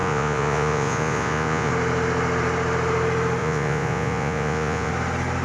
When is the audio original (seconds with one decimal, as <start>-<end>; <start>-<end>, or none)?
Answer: 1.7-3.4; 4.9-5.4